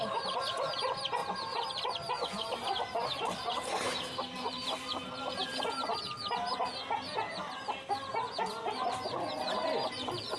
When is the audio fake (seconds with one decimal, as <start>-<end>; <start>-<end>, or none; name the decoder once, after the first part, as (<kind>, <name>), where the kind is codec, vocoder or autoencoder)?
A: none